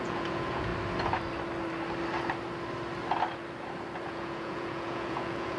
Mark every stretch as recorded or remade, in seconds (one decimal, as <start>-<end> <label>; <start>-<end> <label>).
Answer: 0.0-0.7 remade; 0.7-4.1 recorded; 4.1-5.6 remade